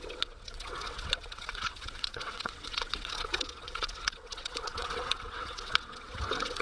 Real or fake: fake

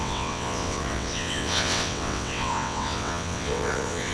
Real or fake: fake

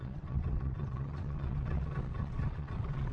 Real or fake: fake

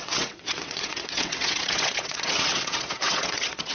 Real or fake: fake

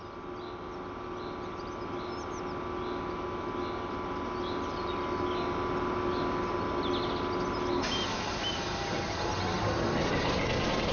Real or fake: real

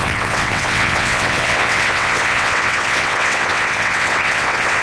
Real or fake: fake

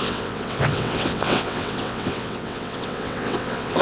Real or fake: fake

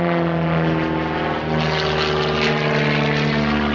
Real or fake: real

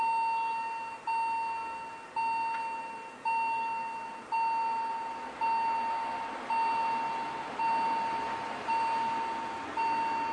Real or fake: real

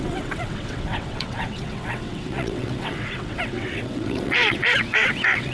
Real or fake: fake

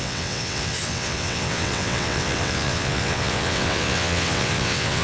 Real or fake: fake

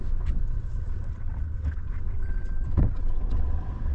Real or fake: fake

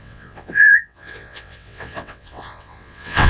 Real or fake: fake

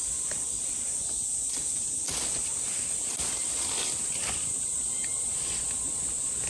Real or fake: real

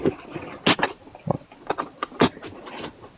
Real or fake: real